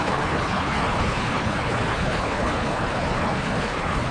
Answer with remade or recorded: remade